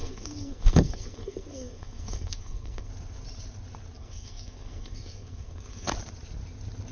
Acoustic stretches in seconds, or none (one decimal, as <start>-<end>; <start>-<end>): 2.9-4.0; 5.9-6.9